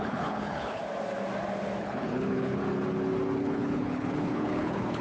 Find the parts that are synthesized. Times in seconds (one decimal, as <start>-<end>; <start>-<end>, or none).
0.0-0.8; 1.8-2.6; 3.4-5.0